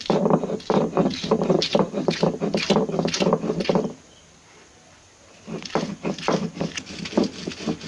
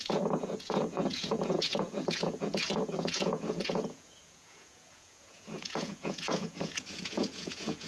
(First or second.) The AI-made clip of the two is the second